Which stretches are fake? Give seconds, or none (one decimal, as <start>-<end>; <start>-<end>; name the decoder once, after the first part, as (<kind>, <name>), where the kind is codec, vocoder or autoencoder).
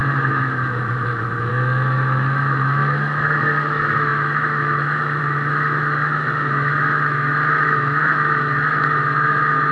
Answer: 0.0-9.7 (autoencoder, DAC-VAE)